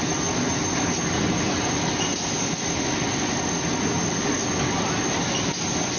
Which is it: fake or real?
real